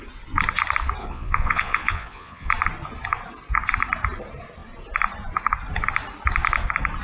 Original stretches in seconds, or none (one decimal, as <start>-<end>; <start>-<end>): 0.0-1.0; 2.5-7.0